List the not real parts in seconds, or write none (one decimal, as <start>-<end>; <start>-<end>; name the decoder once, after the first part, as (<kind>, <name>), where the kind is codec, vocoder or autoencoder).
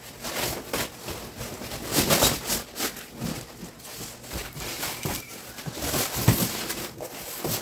4.4-5.3 (vocoder, BigVGAN v2)